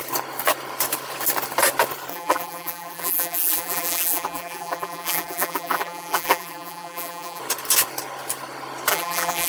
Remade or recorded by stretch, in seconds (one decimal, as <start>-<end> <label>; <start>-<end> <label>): 0.0-2.1 recorded; 2.1-7.4 remade; 7.4-8.9 recorded; 8.9-9.5 remade